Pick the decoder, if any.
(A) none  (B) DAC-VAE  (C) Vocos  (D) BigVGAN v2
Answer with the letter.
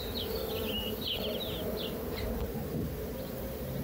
A